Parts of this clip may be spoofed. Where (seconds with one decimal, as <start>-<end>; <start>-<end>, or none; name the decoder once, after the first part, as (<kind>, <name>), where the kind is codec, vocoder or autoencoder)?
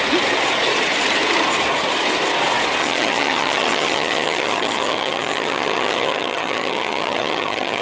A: 2.8-7.8 (vocoder, HiFi-GAN)